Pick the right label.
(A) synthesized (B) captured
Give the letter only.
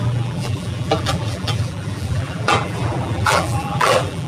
A